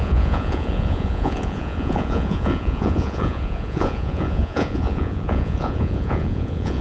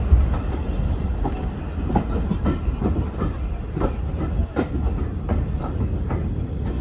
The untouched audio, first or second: second